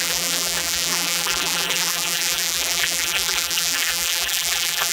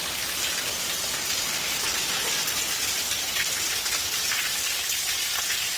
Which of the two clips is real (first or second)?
second